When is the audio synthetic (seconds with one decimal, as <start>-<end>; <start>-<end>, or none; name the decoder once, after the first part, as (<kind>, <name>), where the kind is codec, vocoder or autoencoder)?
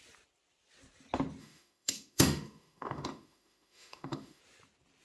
1.4-4.4 (autoencoder, DAC-VAE)